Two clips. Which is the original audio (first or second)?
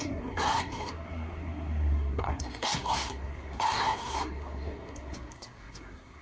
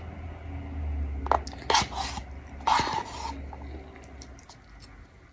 second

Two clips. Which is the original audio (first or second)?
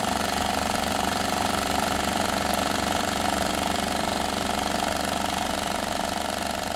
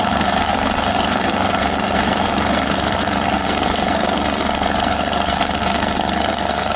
first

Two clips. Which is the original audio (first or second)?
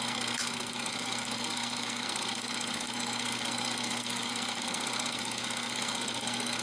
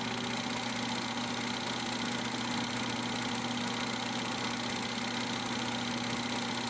second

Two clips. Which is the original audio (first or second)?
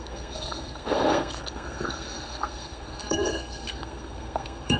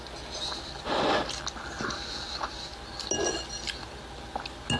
second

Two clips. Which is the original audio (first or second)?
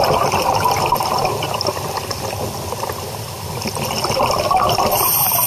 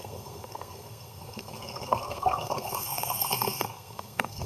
first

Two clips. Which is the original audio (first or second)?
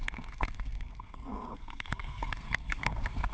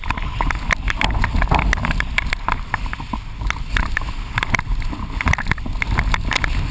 second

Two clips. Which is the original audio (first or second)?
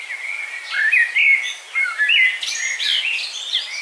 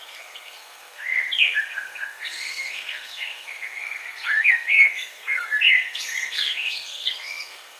first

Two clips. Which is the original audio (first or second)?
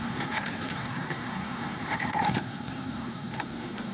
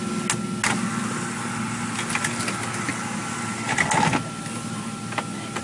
second